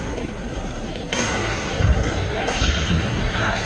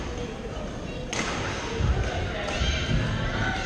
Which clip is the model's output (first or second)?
first